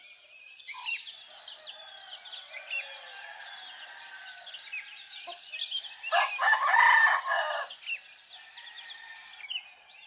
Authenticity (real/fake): real